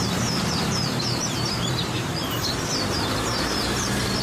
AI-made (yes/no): yes